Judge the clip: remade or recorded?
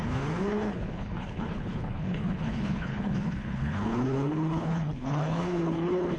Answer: remade